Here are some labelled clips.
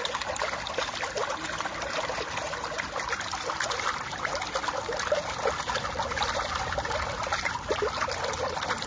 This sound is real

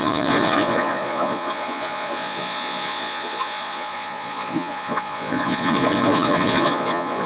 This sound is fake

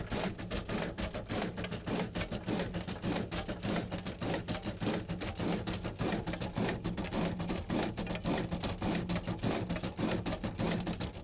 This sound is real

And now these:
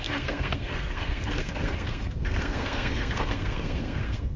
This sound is fake